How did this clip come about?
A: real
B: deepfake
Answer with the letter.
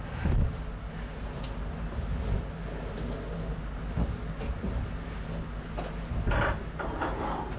A